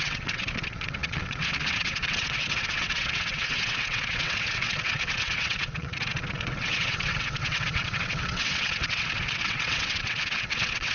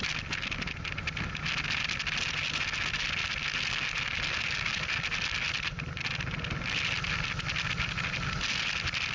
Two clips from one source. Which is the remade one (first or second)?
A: first